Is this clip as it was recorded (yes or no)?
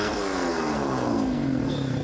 no